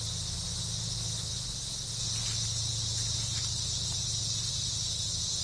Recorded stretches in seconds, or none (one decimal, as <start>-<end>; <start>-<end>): 0.0-5.4